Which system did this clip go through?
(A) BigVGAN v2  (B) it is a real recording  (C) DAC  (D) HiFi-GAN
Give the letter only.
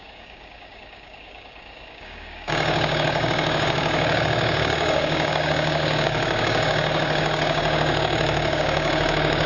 C